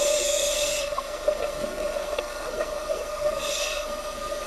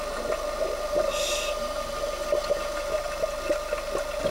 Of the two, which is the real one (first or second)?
second